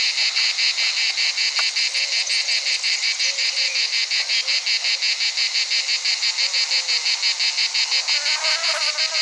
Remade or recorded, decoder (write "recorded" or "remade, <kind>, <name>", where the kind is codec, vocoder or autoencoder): recorded